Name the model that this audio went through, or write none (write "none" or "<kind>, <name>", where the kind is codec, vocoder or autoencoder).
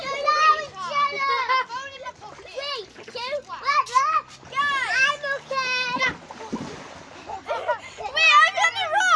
none